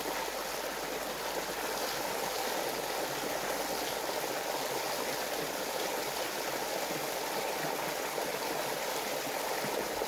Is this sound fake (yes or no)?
no